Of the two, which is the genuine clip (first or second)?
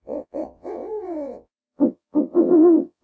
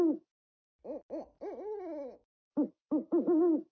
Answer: second